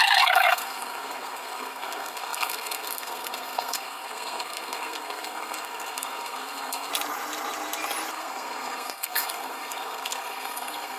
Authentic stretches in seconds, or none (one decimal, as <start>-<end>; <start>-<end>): 6.9-8.1